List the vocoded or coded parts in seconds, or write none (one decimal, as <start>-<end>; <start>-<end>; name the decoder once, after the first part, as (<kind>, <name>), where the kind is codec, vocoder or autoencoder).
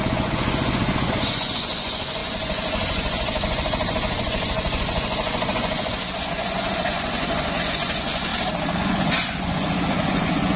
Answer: 0.0-8.3 (vocoder, Vocos); 8.8-10.6